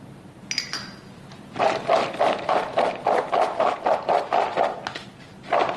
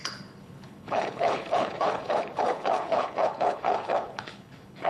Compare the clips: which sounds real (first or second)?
first